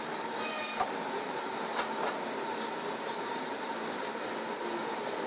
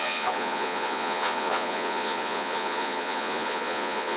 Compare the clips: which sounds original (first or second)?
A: first